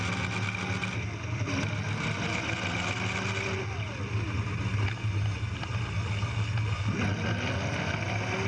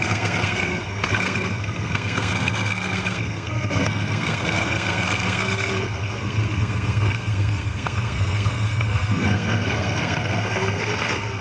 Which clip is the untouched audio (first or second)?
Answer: first